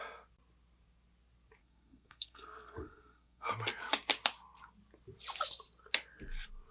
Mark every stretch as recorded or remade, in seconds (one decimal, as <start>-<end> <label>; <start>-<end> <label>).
0.0-1.6 recorded; 1.6-3.5 remade; 3.5-6.7 recorded